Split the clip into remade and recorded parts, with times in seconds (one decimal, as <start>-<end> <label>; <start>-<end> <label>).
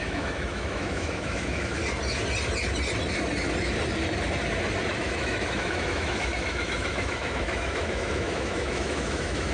0.0-1.8 remade; 1.8-5.0 recorded; 5.0-9.5 remade